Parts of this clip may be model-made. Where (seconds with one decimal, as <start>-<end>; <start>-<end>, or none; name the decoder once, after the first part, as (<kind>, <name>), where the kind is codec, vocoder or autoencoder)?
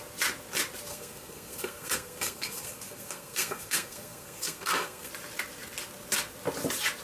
0.9-5.1 (codec, SNAC)